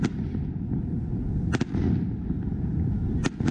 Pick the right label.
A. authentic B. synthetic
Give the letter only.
A